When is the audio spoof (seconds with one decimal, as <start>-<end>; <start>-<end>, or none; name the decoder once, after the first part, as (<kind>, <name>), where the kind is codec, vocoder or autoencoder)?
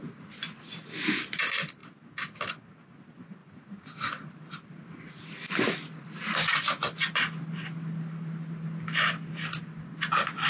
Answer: 1.8-2.5 (vocoder, BigVGAN v2); 3.4-4.8